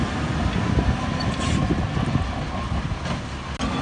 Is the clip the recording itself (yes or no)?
yes